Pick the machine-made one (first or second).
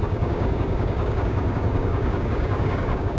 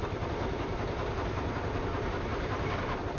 first